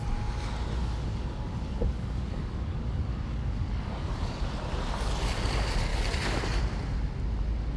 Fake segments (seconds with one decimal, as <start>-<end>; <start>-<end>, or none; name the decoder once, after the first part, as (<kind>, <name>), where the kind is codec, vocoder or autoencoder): 0.8-4.4 (codec, DAC); 5.9-6.6